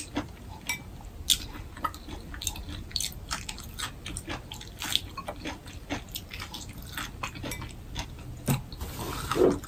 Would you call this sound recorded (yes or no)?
yes